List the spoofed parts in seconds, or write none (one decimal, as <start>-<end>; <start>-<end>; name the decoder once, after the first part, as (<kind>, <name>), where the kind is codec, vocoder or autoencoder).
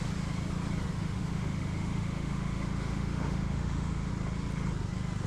0.9-4.1 (autoencoder, DAC-VAE)